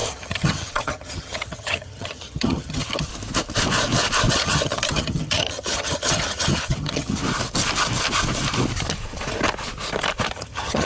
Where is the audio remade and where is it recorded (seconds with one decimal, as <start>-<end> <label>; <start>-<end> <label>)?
0.0-3.1 remade; 3.1-4.3 recorded; 4.3-7.2 remade; 7.2-10.3 recorded; 10.3-10.8 remade